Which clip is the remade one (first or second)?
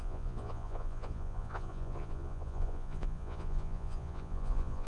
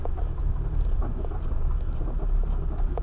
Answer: first